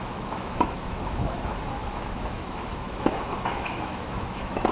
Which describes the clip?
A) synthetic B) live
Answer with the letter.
A